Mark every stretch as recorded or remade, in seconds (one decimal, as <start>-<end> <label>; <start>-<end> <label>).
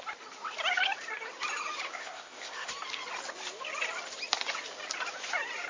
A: 0.0-1.9 recorded; 1.9-2.7 remade; 2.7-5.7 recorded